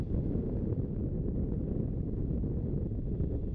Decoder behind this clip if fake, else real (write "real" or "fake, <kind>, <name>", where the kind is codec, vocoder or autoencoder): real